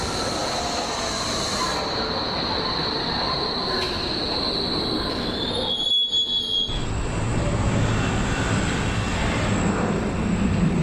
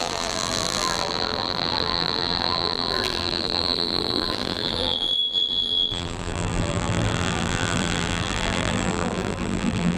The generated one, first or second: second